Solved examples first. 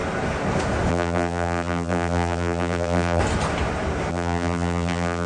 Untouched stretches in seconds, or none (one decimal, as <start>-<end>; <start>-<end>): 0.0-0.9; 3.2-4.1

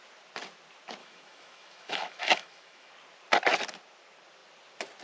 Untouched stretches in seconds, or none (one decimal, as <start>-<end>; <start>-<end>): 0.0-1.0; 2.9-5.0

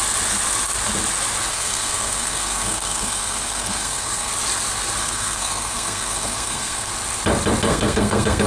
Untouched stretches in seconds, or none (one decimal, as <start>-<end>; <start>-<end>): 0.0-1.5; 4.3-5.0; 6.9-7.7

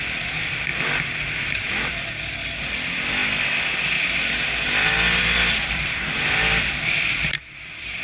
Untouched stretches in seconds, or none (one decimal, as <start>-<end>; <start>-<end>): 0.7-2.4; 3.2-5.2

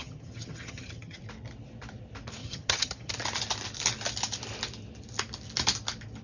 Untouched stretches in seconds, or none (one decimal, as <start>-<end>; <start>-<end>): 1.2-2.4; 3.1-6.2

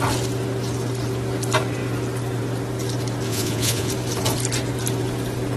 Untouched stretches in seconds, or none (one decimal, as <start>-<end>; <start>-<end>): 0.0-3.3; 3.9-5.6